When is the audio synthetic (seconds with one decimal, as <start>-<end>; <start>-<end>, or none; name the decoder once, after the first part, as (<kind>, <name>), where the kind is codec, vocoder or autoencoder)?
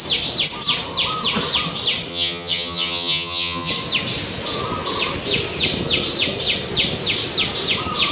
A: 2.1-3.7 (vocoder, HiFi-GAN)